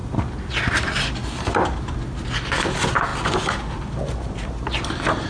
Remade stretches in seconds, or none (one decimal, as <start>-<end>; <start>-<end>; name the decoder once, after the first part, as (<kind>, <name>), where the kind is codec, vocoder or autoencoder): none